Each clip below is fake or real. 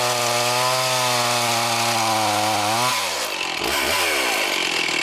real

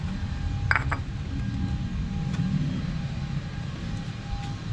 real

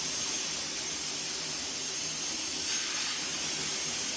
real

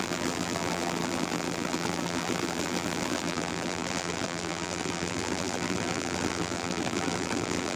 fake